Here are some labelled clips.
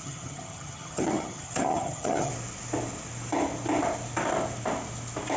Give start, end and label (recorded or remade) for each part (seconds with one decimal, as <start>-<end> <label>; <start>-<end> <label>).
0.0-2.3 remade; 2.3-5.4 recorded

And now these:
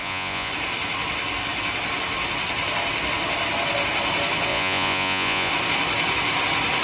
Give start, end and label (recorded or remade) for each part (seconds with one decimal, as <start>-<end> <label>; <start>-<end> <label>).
0.0-0.5 remade; 0.5-4.5 recorded; 4.5-5.5 remade; 5.5-6.8 recorded

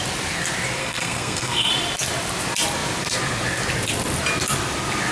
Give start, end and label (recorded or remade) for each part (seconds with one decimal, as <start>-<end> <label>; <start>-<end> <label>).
0.0-0.8 recorded; 0.8-1.7 remade; 1.7-5.1 recorded

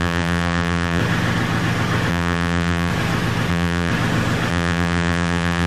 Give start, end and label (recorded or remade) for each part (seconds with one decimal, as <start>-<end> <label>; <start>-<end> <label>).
0.0-1.0 remade; 1.0-2.1 recorded; 2.1-2.9 remade; 2.9-3.5 recorded; 3.5-3.9 remade; 3.9-4.5 recorded; 4.5-5.7 remade